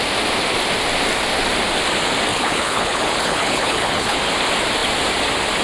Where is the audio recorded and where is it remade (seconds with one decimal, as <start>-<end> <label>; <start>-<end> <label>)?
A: 0.0-2.3 recorded; 2.3-4.2 remade; 4.2-5.6 recorded